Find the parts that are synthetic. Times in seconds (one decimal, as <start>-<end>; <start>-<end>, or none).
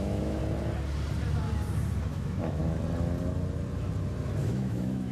0.0-0.4; 2.1-2.6; 4.4-5.1